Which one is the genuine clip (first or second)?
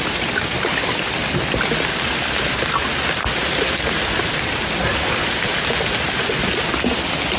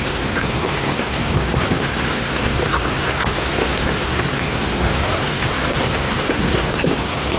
first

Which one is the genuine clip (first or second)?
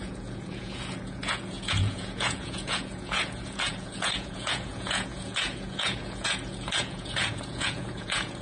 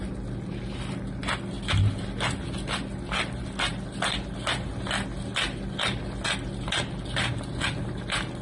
second